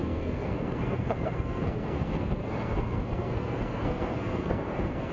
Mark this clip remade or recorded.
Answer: remade